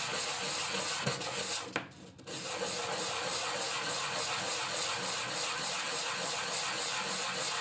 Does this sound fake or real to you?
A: real